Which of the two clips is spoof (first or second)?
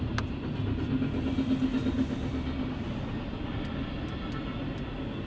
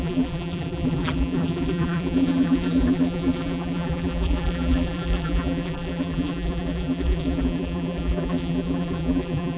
second